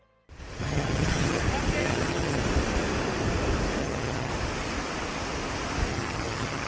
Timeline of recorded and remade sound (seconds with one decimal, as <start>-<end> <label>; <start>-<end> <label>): 0.0-0.6 recorded; 0.6-1.4 remade; 1.4-1.8 recorded; 1.8-2.4 remade; 2.4-3.8 recorded; 3.8-4.3 remade; 4.3-5.9 recorded; 5.9-6.7 remade